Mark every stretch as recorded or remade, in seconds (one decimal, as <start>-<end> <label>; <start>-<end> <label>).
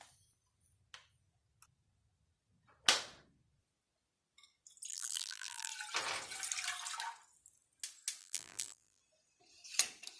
0.0-4.9 recorded; 4.9-5.7 remade; 5.7-8.2 recorded; 8.2-9.0 remade; 9.0-10.2 recorded